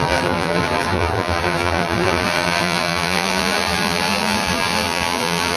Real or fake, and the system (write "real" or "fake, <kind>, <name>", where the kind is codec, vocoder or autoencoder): fake, vocoder, BigVGAN v2